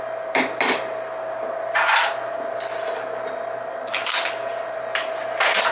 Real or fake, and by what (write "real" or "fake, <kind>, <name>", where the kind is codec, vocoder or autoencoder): real